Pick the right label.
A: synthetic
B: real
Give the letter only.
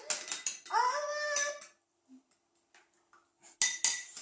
B